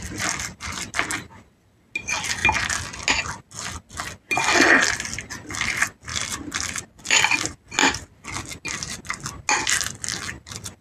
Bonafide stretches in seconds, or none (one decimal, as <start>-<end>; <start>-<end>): 0.0-6.1; 7.3-7.8; 8.4-10.8